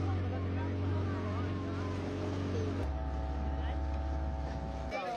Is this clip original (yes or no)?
yes